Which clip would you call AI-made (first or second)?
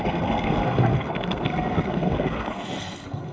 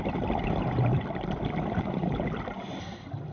first